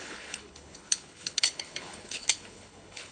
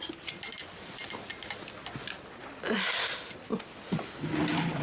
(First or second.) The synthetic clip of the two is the first